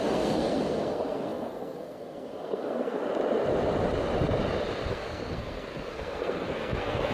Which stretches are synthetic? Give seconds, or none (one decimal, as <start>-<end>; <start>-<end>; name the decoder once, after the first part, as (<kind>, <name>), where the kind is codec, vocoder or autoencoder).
0.0-3.0 (codec, SNAC); 4.9-7.1